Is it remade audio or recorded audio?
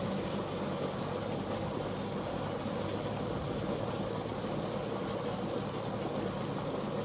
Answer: recorded